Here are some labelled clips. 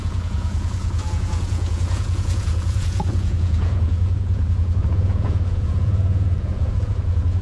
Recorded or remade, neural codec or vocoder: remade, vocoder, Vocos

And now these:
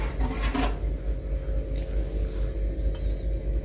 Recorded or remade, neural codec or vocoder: recorded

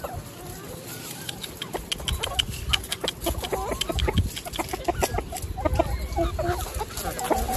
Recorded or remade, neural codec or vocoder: recorded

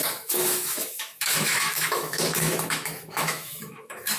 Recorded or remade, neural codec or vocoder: remade, autoencoder, DAC-VAE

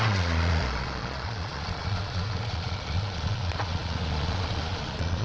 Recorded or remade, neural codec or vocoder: remade, vocoder, Vocos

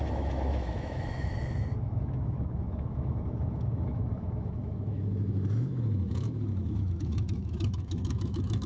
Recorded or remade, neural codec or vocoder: remade, autoencoder, DAC-VAE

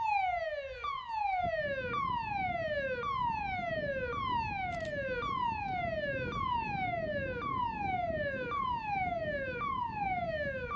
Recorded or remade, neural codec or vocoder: recorded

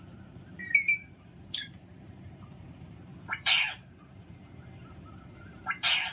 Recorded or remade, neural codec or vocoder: remade, vocoder, BigVGAN v2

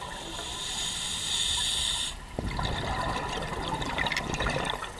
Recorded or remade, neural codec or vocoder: recorded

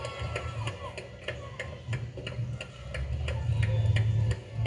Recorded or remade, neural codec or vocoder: recorded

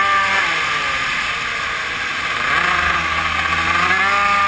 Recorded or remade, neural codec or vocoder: recorded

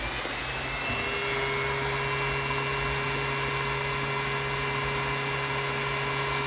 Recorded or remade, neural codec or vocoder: recorded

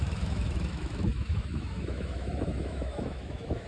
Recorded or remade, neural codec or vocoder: remade, autoencoder, DAC-VAE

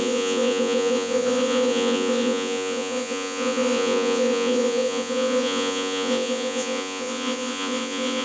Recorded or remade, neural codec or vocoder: remade, vocoder, Vocos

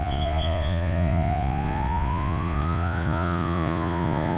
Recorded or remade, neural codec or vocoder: remade, vocoder, Vocos